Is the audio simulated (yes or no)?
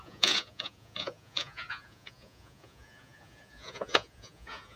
yes